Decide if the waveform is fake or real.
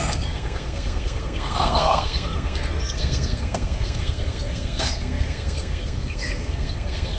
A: fake